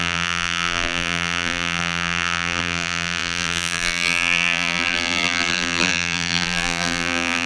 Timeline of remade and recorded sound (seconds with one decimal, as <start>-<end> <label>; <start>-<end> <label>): 0.0-7.5 remade